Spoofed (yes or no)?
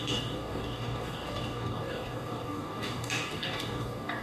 yes